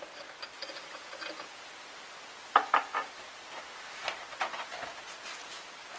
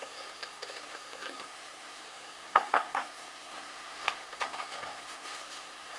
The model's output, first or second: second